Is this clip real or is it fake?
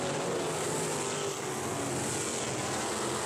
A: real